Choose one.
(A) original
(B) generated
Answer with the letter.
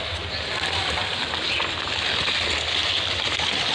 A